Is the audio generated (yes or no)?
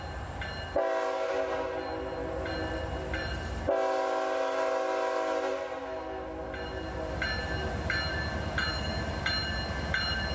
no